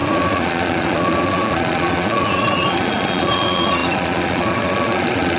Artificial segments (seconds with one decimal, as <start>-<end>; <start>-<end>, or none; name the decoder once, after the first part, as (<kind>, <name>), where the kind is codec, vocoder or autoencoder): 0.0-5.4 (vocoder, Vocos)